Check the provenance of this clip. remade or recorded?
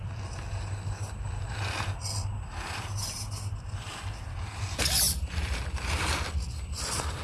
recorded